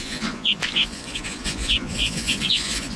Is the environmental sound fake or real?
fake